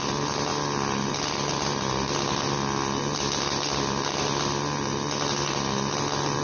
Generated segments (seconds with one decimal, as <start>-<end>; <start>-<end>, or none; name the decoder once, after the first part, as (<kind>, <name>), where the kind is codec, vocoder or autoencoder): none